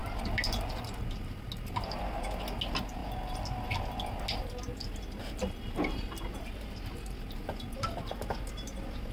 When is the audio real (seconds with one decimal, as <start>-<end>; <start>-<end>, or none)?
0.0-9.1